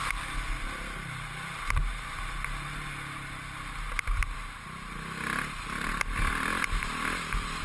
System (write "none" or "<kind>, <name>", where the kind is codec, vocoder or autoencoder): none